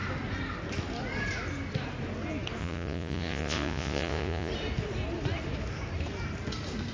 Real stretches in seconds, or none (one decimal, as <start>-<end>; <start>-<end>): 0.0-2.6; 4.5-6.9